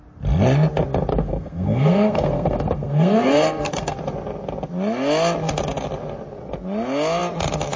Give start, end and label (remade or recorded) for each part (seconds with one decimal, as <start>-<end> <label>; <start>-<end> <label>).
0.0-1.1 recorded; 1.1-4.0 remade; 4.0-7.8 recorded